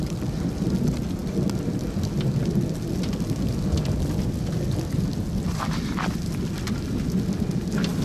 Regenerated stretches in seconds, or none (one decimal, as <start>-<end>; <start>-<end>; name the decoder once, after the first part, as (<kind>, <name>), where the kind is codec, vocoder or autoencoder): none